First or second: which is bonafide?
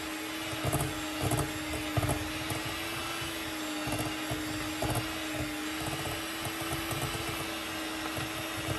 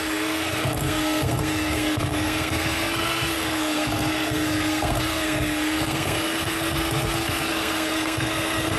first